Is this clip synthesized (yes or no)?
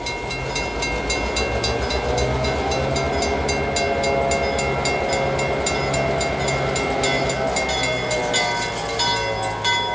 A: no